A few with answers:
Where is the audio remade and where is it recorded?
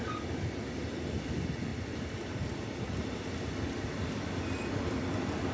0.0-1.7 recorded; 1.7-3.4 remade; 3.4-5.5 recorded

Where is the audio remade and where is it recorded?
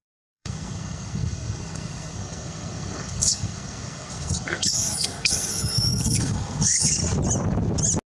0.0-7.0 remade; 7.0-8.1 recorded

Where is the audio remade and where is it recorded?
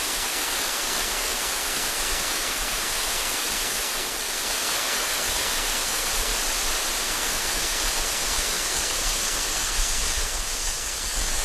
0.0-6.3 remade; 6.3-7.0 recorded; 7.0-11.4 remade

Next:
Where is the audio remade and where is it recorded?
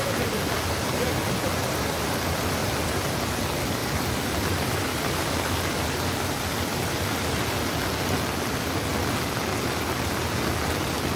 0.0-11.2 recorded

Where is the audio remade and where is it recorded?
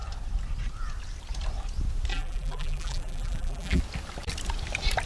0.0-2.1 recorded; 2.1-3.8 remade; 3.8-5.1 recorded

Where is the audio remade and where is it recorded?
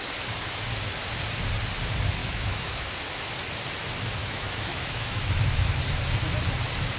0.0-2.2 recorded; 2.2-2.9 remade; 2.9-4.2 recorded; 4.2-5.8 remade; 5.8-7.0 recorded